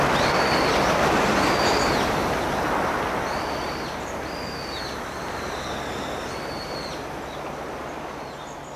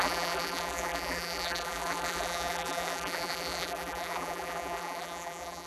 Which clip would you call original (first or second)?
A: first